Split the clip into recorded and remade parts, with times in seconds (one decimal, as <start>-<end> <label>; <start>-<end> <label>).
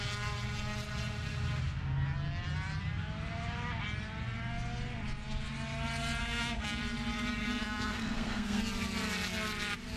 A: 0.0-6.2 recorded; 6.2-6.8 remade; 6.8-7.4 recorded; 7.4-8.6 remade; 8.6-10.0 recorded